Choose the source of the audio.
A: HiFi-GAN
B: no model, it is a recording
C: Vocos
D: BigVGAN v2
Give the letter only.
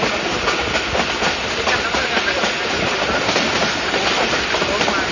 B